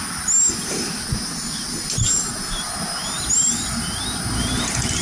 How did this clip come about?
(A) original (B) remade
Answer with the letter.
A